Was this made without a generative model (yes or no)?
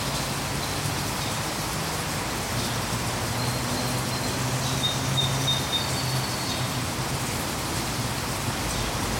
yes